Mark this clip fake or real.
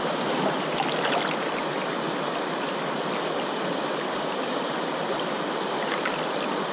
real